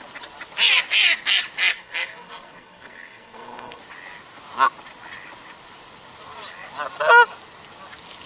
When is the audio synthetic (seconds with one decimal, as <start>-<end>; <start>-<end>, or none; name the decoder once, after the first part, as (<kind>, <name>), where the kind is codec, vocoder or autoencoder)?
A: 1.7-3.8 (codec, SNAC)